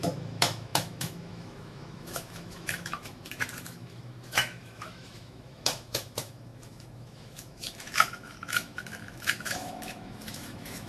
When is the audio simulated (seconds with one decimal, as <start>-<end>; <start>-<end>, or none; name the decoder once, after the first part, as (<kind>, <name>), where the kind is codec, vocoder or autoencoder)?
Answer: 0.0-10.9 (autoencoder, DAC-VAE)

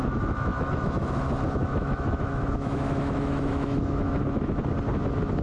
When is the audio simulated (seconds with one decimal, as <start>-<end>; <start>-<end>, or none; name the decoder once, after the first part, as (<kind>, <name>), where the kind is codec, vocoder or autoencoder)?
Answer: 0.0-1.2 (autoencoder, DAC-VAE); 1.6-4.7

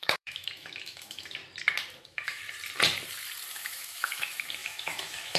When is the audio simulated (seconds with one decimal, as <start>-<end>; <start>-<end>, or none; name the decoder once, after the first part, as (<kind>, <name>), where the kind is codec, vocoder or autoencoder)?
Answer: 0.0-1.4 (autoencoder, DAC-VAE); 2.0-2.4; 3.5-5.4